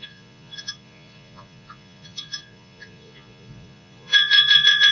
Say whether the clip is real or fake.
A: fake